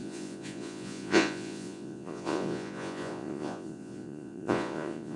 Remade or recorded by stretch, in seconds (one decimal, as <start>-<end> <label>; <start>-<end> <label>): 0.0-5.2 remade